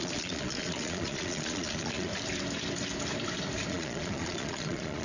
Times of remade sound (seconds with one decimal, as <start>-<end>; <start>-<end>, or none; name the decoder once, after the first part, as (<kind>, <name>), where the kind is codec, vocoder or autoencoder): 0.0-2.1 (vocoder, Vocos); 3.7-5.0